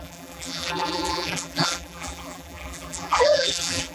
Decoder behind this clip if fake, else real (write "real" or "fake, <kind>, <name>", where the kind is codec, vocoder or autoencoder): fake, vocoder, BigVGAN v2